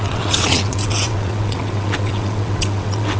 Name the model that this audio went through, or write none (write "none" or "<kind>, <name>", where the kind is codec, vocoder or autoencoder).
vocoder, WaveNeXt